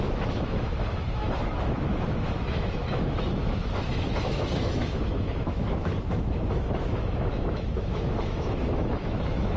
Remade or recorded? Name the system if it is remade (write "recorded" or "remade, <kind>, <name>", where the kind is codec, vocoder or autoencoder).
remade, autoencoder, DAC-VAE